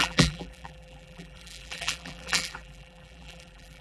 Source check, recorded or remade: remade